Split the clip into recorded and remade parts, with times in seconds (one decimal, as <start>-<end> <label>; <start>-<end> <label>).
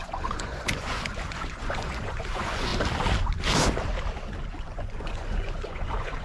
0.0-2.7 remade; 2.7-4.5 recorded; 4.5-6.2 remade